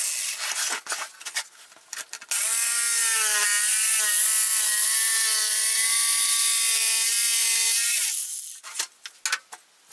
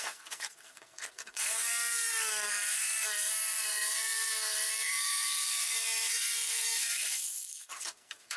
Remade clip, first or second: second